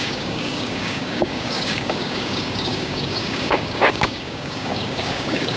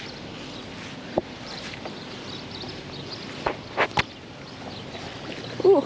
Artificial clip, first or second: first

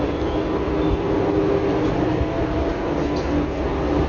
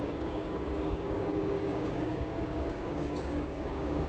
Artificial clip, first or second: second